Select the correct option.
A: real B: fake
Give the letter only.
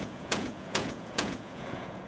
B